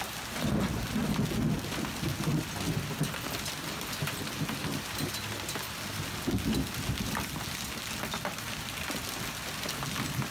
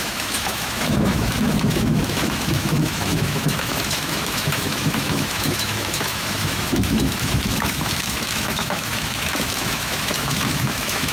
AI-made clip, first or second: second